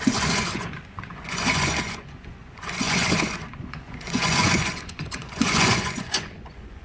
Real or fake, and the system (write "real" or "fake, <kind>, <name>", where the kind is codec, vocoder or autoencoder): fake, vocoder, Vocos